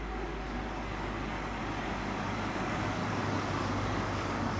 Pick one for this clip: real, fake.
fake